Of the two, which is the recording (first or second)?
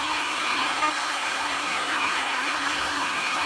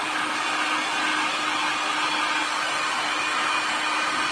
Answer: second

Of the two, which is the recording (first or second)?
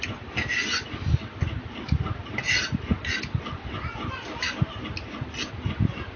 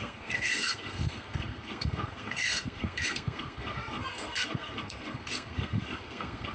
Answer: first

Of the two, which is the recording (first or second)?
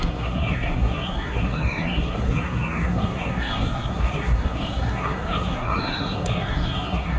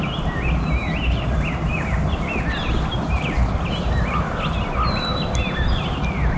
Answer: second